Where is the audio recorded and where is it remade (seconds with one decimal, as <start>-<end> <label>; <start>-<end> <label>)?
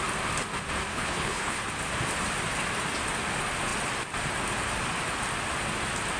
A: 0.0-0.9 recorded; 0.9-1.6 remade; 1.6-6.2 recorded